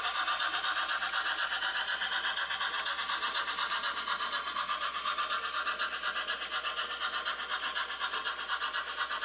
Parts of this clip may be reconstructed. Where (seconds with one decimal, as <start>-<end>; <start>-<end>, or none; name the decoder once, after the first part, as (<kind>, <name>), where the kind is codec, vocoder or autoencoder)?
none